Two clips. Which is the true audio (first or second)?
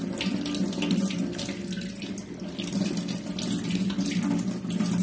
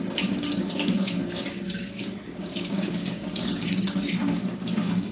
first